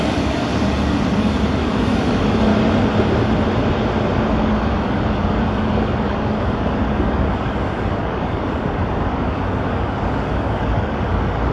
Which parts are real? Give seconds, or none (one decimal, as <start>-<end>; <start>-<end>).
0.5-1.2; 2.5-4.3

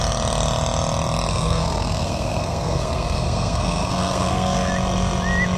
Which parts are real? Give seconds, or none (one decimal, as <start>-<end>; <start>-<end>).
0.0-1.3; 4.7-5.6

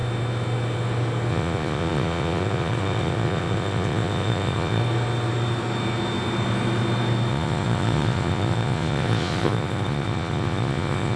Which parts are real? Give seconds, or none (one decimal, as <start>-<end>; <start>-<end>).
0.0-1.3; 4.8-7.3

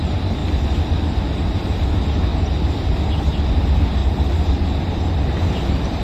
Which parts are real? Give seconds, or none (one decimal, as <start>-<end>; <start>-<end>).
0.4-1.2; 2.3-3.6; 4.0-5.4

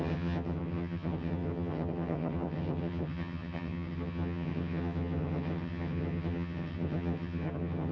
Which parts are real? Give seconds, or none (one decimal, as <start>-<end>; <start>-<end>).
none

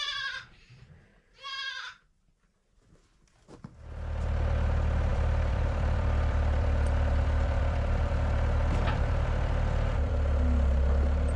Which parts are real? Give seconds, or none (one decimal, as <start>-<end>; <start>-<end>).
0.0-5.1; 10.1-11.4

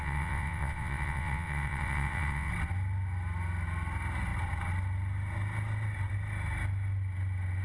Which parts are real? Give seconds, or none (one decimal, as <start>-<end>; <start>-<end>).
2.5-7.6

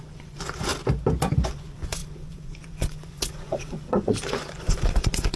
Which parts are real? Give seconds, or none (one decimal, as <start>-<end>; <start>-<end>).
0.7-1.5